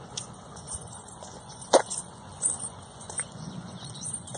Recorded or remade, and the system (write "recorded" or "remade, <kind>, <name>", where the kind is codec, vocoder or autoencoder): remade, vocoder, Vocos